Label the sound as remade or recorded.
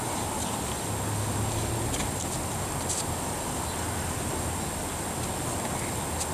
recorded